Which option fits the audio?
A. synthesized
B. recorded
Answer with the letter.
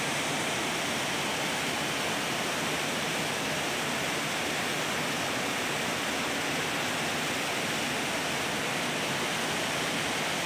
B